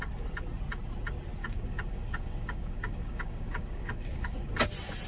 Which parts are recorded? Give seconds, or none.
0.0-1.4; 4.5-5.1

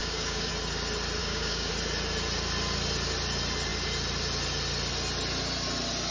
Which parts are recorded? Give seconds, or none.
0.5-1.2; 1.7-6.1

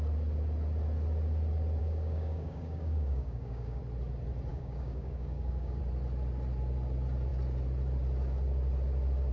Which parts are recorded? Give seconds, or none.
0.0-1.8; 3.8-4.5; 5.8-9.3

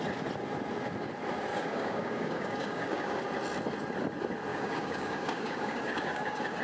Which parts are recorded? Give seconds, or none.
0.0-1.5; 3.2-4.5

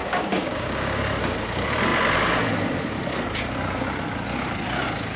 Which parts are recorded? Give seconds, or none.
1.2-5.2